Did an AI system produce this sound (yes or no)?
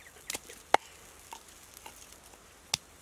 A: no